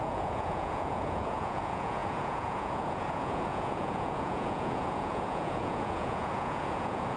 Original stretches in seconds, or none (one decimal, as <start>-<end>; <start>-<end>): none